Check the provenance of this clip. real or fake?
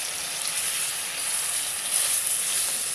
real